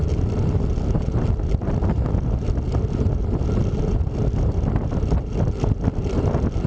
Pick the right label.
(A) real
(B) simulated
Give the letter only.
A